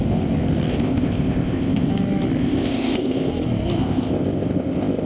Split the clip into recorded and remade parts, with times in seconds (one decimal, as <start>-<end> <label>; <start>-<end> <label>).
0.0-0.7 recorded; 0.7-1.9 remade; 1.9-2.4 recorded; 2.4-3.3 remade; 3.3-3.8 recorded; 3.8-5.1 remade